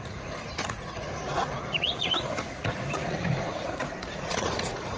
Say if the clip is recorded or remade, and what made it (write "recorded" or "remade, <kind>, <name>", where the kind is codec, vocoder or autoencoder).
remade, vocoder, Vocos